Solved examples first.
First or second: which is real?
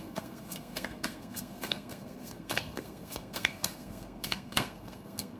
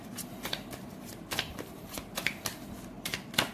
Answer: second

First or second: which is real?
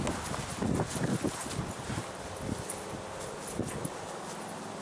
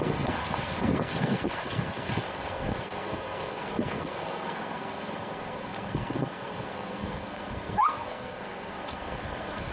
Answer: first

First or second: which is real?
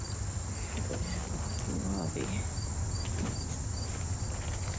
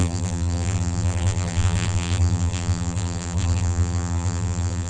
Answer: first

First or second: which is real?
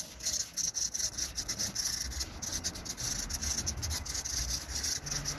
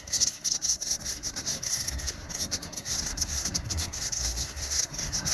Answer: first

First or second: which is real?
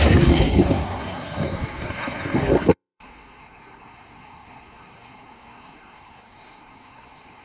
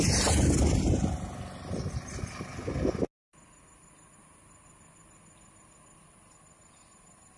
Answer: second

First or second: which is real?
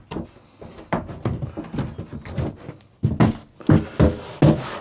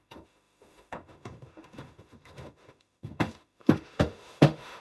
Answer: first